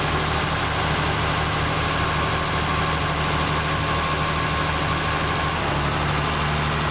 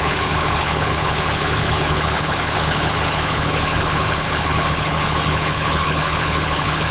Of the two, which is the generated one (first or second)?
second